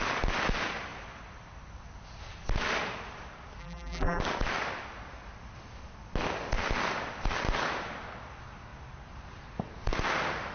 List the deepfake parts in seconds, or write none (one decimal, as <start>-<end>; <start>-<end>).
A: 3.6-4.2